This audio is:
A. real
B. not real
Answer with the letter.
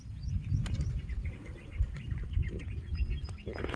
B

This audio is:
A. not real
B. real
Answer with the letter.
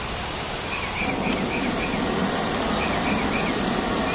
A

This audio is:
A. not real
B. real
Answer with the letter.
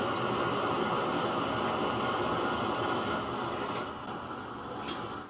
A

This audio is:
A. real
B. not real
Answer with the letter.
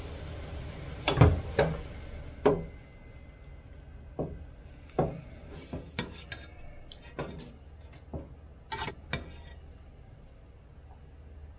A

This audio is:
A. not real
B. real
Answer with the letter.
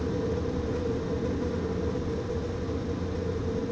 B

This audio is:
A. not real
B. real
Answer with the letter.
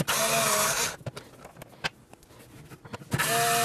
B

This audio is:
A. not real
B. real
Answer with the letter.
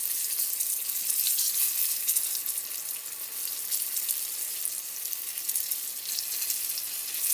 B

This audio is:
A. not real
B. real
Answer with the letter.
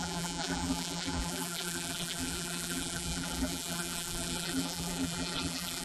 A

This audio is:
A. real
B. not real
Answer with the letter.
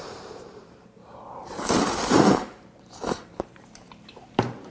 B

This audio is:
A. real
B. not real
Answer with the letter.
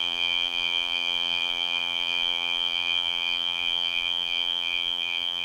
B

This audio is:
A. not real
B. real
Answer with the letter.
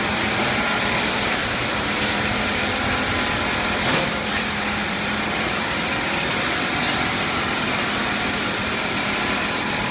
A